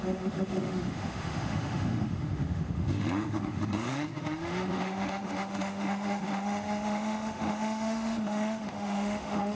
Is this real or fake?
fake